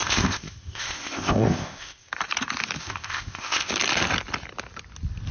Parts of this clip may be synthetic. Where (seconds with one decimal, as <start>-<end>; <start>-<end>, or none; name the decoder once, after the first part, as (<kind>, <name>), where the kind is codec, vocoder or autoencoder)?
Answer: 0.0-2.1 (codec, ZipCodec); 2.8-3.7